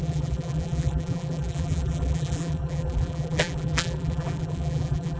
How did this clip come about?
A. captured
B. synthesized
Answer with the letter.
B